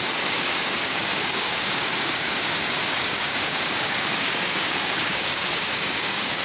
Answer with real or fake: fake